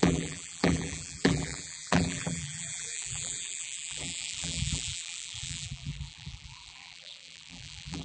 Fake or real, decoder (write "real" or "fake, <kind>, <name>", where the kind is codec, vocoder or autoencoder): fake, vocoder, BigVGAN v2